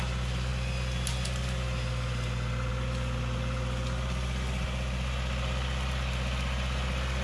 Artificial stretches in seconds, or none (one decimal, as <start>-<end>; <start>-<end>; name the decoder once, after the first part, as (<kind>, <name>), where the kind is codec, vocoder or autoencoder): none